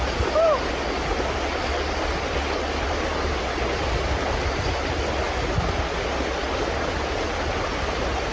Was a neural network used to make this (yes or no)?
no